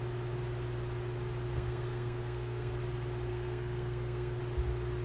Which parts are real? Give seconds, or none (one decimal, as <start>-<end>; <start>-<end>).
0.0-1.5; 2.7-3.3; 4.4-5.0